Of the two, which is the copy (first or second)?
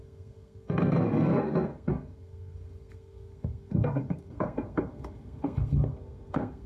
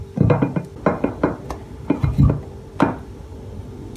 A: first